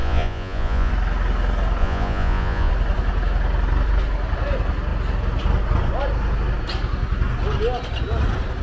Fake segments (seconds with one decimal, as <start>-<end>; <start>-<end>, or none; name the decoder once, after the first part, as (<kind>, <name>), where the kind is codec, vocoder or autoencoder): 0.0-0.9 (vocoder, Vocos); 1.8-2.7